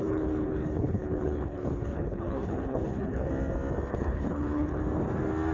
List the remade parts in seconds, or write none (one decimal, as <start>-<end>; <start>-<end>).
0.0-3.3; 3.9-4.8